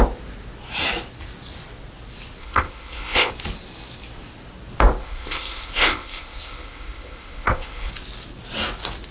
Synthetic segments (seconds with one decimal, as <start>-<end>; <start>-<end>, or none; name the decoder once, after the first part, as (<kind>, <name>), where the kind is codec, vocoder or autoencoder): 2.4-3.3 (codec, ZipCodec); 5.0-7.9